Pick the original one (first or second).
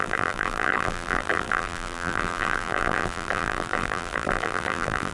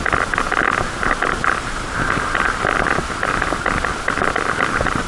second